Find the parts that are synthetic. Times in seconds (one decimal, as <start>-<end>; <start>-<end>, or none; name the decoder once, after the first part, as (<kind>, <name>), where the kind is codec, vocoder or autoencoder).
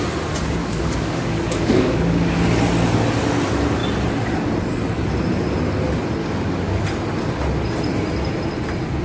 0.6-2.4 (codec, DAC); 6.2-6.8